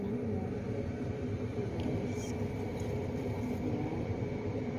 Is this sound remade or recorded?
remade